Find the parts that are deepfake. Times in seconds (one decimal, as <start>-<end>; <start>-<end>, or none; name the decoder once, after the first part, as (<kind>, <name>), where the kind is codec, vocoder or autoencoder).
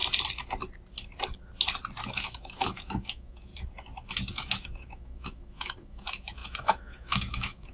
2.0-3.5 (autoencoder, DAC-VAE); 4.3-7.7